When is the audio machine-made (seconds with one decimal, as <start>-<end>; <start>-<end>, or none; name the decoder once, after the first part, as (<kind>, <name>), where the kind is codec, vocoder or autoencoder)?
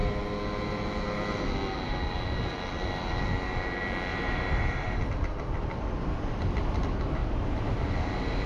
4.1-5.0 (vocoder, BigVGAN v2); 7.2-7.8